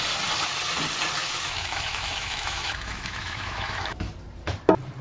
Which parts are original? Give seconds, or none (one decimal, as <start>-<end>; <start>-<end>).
0.0-1.2; 4.0-5.0